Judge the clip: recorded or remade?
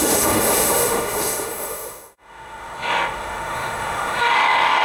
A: remade